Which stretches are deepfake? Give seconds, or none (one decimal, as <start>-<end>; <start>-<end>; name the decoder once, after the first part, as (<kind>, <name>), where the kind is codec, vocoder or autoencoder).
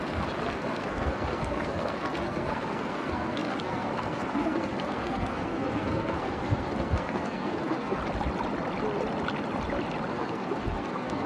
0.0-8.0 (codec, SNAC); 10.1-11.3